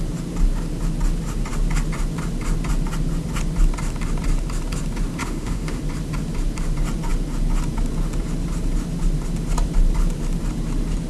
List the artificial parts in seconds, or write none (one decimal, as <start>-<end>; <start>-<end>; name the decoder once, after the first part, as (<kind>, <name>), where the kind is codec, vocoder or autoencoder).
5.2-5.8 (autoencoder, DAC-VAE)

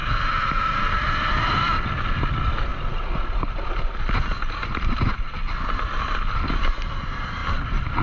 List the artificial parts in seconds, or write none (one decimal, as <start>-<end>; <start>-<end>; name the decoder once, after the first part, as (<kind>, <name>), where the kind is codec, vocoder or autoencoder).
none

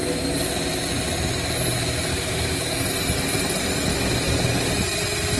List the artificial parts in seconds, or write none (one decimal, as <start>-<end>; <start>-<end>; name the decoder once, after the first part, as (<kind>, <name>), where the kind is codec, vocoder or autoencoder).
2.1-2.8 (codec, DAC)

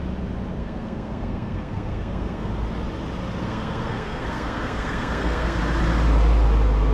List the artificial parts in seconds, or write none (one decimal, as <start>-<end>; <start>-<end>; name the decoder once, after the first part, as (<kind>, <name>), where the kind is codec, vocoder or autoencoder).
0.6-2.5 (codec, SNAC); 3.4-5.6